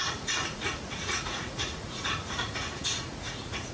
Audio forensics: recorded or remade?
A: remade